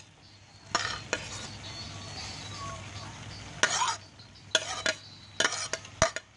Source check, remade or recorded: recorded